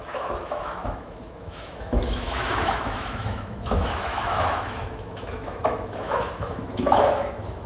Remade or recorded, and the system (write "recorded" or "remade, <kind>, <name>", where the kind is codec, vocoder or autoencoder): remade, autoencoder, DAC-VAE